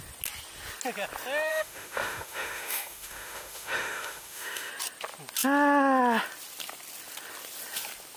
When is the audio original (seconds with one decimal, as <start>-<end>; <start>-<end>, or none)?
0.0-1.5; 4.7-8.2